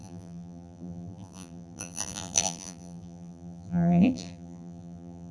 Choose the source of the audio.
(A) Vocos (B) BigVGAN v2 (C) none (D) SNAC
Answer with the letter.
B